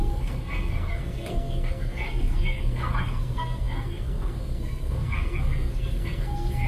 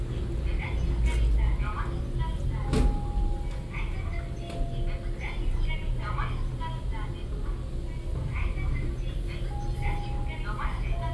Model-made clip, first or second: first